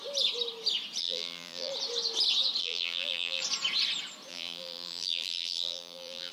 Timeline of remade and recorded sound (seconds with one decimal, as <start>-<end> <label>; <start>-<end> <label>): 0.0-1.0 recorded; 1.0-1.7 remade; 1.7-2.6 recorded; 2.6-3.4 remade; 3.4-4.3 recorded; 4.3-6.3 remade